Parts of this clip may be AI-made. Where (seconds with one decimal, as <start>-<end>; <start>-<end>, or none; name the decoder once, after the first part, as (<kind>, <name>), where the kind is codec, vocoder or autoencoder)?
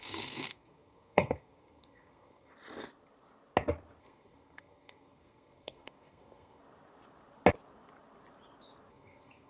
0.0-2.5 (codec, SNAC); 4.0-6.6; 8.9-9.5